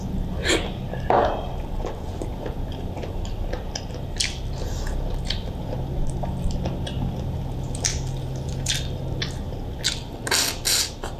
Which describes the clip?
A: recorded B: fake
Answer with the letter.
A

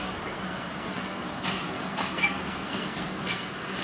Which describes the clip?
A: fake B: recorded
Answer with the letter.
A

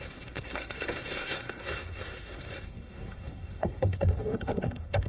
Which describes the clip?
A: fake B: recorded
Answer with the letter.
A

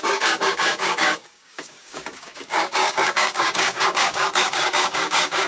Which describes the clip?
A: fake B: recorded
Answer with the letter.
A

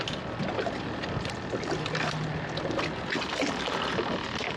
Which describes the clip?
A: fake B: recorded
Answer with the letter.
B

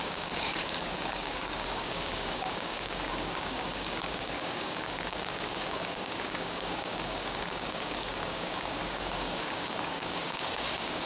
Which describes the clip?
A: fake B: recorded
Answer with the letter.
A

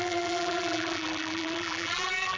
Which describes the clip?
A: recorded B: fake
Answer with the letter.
B